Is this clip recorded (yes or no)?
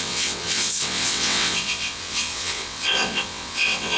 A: no